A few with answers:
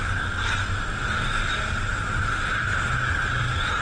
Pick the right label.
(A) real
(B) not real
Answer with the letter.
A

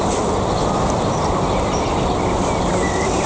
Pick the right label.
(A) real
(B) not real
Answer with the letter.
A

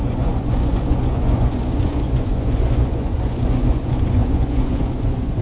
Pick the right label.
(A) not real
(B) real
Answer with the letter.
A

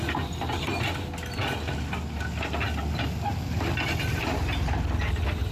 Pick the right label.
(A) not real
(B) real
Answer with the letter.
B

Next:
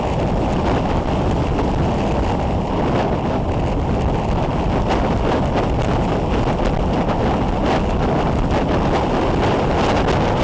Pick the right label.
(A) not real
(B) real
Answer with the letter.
B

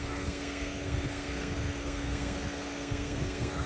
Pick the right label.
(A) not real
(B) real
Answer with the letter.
A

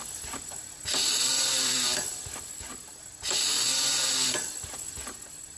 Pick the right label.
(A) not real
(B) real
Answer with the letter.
B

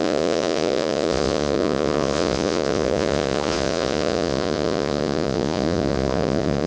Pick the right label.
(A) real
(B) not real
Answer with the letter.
B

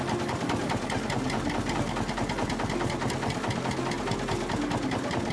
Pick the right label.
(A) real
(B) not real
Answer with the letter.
A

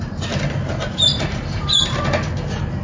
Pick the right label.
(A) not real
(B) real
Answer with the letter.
B